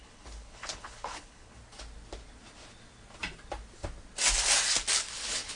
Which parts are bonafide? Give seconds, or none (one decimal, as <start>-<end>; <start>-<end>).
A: 1.6-5.0